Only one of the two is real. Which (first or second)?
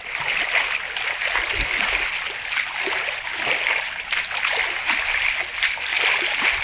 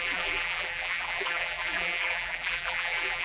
first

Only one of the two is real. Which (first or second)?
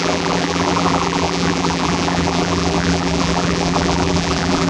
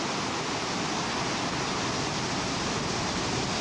second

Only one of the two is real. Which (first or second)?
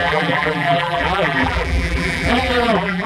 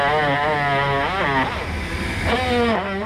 second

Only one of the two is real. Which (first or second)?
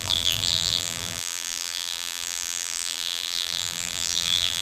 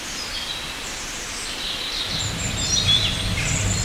second